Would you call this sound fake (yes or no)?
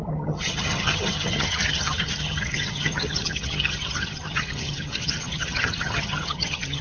yes